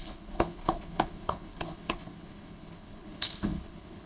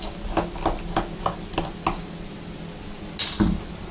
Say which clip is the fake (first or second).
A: first